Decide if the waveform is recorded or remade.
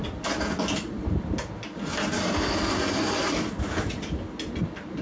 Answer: recorded